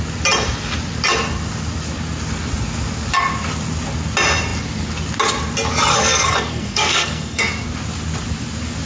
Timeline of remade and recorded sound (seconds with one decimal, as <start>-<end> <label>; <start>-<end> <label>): 0.0-5.9 recorded; 5.9-7.5 remade; 7.5-8.9 recorded